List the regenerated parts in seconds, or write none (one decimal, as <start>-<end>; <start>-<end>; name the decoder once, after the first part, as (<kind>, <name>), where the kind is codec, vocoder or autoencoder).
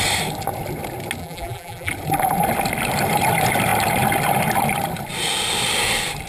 1.2-1.9 (vocoder, BigVGAN v2)